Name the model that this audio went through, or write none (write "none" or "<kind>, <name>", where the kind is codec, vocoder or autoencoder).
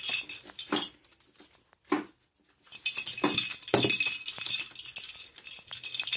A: none